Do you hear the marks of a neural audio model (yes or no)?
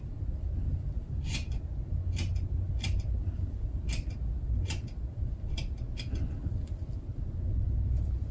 no